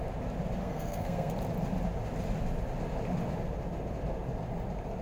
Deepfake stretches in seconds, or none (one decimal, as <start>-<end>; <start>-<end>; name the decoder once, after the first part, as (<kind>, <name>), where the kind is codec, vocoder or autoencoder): 0.6-1.3 (codec, SNAC)